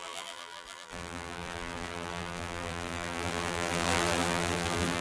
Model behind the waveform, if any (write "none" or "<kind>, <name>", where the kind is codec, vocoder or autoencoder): vocoder, BigVGAN v2